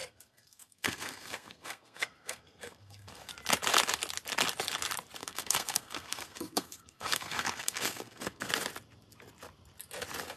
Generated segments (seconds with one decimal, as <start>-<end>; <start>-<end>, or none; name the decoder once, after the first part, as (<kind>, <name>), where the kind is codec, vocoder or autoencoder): 0.0-3.3 (codec, SNAC); 5.2-8.5